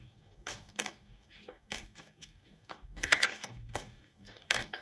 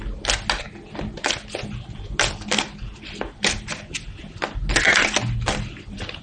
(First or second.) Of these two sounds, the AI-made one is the first